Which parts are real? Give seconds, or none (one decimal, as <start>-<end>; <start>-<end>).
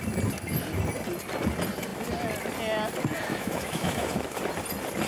0.0-3.3; 4.4-5.1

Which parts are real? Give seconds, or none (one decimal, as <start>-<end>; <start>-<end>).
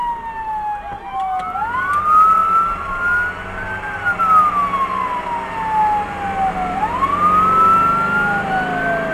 0.0-9.1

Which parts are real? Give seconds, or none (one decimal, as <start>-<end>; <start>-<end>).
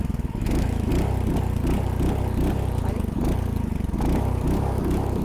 0.9-4.0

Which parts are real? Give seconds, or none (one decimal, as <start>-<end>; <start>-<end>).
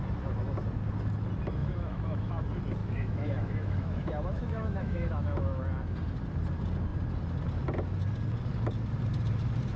0.0-1.6; 2.3-2.8; 5.6-9.8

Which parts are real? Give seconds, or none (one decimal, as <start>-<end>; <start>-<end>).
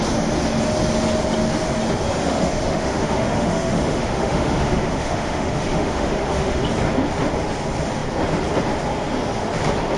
0.0-2.2; 6.6-10.0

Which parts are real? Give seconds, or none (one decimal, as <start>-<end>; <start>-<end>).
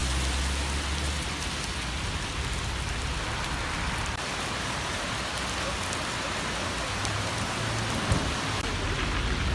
0.0-9.5